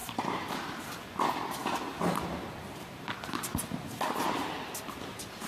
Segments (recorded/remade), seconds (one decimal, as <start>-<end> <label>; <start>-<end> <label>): 0.0-0.8 remade; 0.8-1.6 recorded; 1.6-3.9 remade; 3.9-5.5 recorded